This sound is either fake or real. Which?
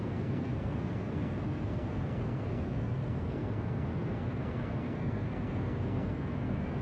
fake